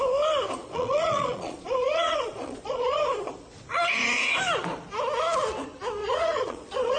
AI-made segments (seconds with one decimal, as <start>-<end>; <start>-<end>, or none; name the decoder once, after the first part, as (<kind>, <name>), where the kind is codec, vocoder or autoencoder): 0.6-3.3 (vocoder, Vocos); 6.0-7.0